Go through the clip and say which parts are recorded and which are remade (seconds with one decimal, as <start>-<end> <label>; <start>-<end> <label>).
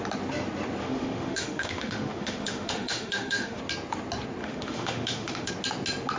0.0-0.8 recorded; 0.8-3.6 remade; 3.6-4.4 recorded; 4.4-5.5 remade; 5.5-6.2 recorded